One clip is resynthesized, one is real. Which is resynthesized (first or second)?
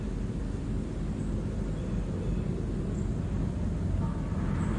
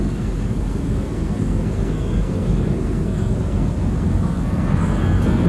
second